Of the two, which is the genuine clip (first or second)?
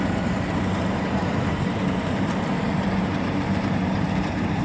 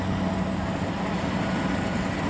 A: second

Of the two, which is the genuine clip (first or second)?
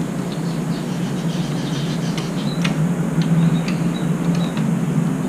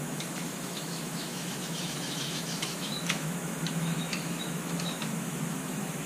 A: first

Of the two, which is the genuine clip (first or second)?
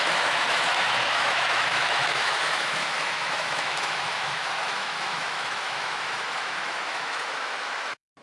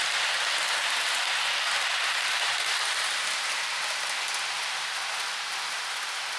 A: second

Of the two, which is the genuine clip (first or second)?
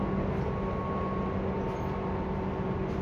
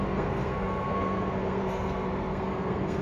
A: first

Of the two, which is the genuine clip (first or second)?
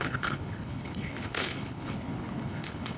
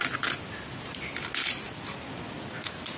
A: second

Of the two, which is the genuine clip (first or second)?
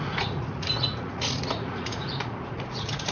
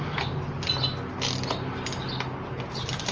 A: second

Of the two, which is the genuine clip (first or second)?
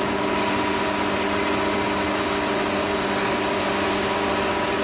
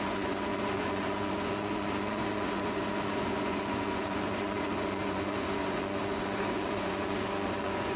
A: first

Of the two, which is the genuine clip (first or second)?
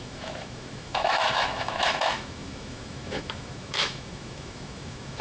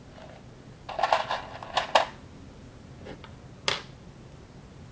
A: second